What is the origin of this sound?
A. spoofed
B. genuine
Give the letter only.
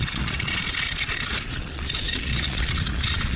A